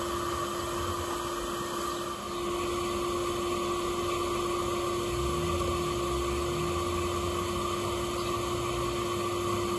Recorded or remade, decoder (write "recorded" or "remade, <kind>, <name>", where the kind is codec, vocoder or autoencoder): recorded